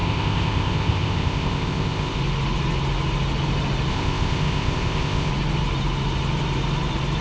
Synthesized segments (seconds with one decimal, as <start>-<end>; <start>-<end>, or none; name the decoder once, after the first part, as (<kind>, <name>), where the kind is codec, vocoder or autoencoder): 0.0-2.2 (codec, ZipCodec); 3.9-5.3